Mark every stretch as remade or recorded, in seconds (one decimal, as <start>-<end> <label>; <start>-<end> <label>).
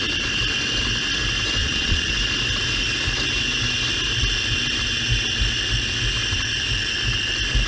0.0-1.6 recorded; 1.6-2.1 remade; 2.1-7.7 recorded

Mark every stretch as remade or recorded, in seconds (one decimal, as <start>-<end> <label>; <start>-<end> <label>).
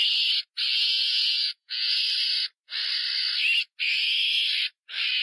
0.0-0.7 recorded; 0.7-2.0 remade; 2.0-5.2 recorded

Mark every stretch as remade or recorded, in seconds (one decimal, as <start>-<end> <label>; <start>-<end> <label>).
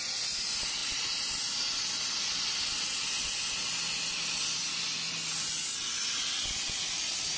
0.0-7.4 recorded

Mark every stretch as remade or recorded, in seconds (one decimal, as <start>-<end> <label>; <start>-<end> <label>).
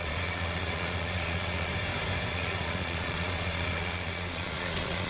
0.0-1.7 remade; 1.7-2.3 recorded; 2.3-5.1 remade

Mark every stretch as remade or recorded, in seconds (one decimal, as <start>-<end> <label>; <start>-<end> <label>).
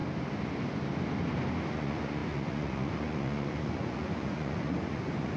0.0-1.7 recorded; 1.7-5.4 remade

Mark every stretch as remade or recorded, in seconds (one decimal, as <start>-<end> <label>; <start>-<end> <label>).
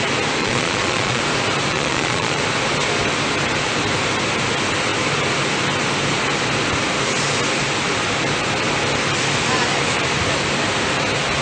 0.0-0.4 recorded; 0.4-1.2 remade; 1.2-1.7 recorded; 1.7-2.4 remade; 2.4-11.4 recorded